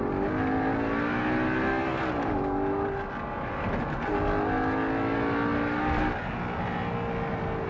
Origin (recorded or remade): recorded